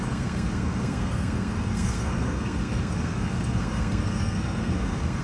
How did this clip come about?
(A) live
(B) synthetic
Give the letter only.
B